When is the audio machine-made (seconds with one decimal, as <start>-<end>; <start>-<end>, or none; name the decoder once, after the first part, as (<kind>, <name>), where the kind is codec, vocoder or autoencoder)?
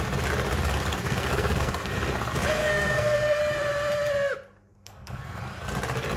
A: 0.9-1.9 (codec, SNAC); 2.6-3.4; 4.7-5.4